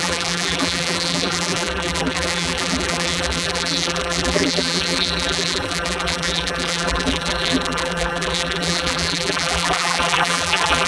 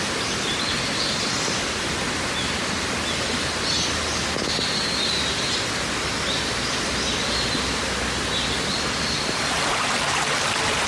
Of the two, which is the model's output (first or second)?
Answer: first